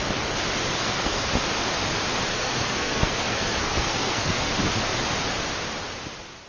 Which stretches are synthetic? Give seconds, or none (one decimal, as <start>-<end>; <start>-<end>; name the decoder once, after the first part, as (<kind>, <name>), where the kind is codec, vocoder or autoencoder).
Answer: 0.7-1.3 (codec, SNAC); 2.3-4.5